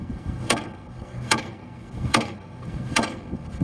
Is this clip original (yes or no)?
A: no